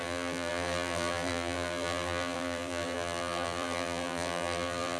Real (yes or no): no